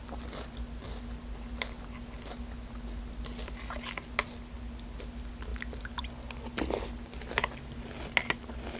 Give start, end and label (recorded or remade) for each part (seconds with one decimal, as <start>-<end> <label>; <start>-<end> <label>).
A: 0.0-8.8 recorded